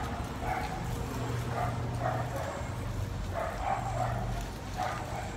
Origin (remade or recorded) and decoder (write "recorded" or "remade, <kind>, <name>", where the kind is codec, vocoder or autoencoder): recorded